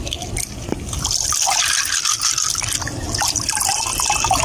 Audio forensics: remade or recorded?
recorded